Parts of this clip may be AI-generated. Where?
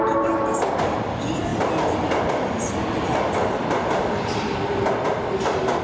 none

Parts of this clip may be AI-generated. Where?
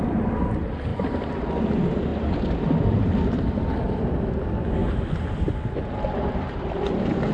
0.9-1.5 (vocoder, BigVGAN v2); 2.1-3.8; 4.8-7.3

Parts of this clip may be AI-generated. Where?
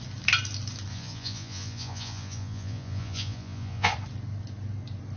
0.9-3.9 (vocoder, Vocos)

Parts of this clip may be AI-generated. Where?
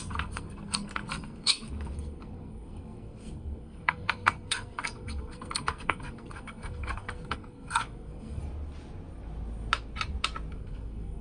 0.0-8.4 (codec, SNAC); 10.5-11.2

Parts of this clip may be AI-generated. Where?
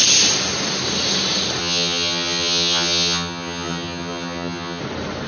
1.6-4.8 (vocoder, HiFi-GAN)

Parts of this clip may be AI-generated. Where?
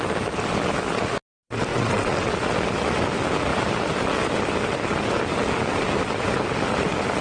1.7-2.3 (vocoder, WaveNeXt)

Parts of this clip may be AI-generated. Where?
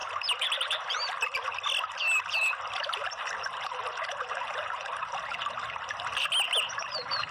none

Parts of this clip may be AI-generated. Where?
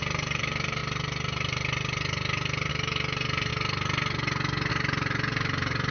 0.0-0.8 (vocoder, BigVGAN v2); 2.7-3.5; 4.7-5.9